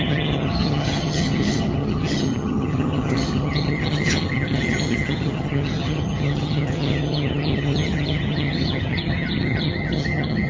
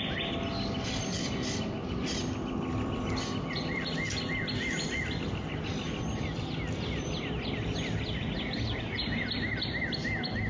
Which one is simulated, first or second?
first